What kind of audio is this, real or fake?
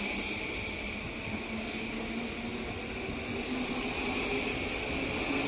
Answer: real